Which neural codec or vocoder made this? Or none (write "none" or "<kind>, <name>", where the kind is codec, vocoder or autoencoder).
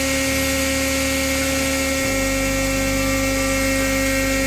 none